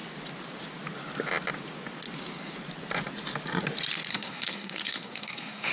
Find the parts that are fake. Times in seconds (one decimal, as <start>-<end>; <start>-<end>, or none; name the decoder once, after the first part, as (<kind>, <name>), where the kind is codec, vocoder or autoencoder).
4.1-5.7 (codec, SNAC)